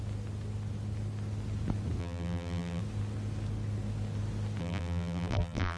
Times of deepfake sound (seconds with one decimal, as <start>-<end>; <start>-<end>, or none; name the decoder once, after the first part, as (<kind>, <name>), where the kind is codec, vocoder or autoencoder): 2.0-2.8 (vocoder, BigVGAN v2); 4.6-5.8